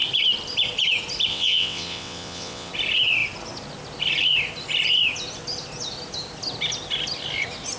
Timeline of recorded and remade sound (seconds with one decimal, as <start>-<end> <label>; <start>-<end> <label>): 0.0-1.3 recorded; 1.3-2.7 remade; 2.7-7.8 recorded